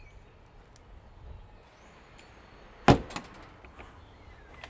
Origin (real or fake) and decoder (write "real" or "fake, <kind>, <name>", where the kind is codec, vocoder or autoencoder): real